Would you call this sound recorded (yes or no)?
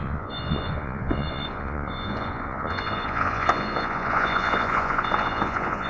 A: no